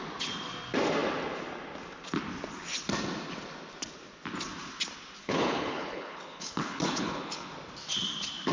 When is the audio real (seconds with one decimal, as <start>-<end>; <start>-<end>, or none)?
0.0-5.2; 7.5-8.5